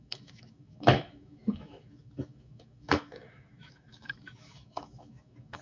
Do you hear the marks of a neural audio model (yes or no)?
yes